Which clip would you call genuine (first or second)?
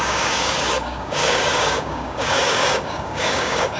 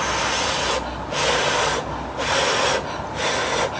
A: second